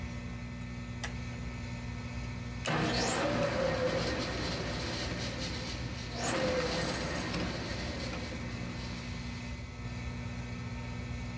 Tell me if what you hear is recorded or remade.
recorded